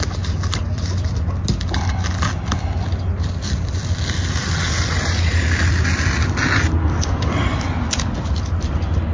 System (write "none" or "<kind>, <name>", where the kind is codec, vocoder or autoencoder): none